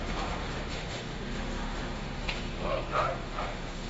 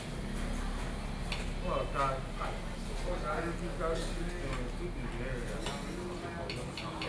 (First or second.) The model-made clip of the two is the first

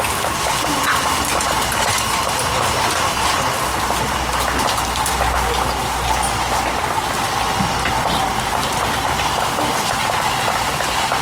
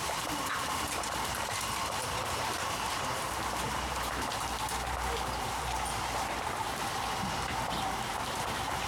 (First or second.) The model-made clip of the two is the second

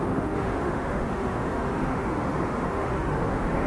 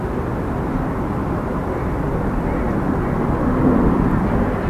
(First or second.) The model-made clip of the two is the first